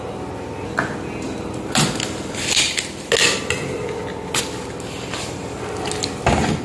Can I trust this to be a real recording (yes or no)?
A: yes